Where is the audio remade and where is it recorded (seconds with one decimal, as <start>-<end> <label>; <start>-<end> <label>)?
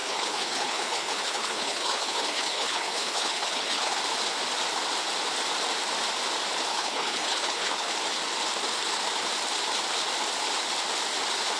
0.0-4.0 remade; 4.0-6.7 recorded; 6.7-7.9 remade; 7.9-11.6 recorded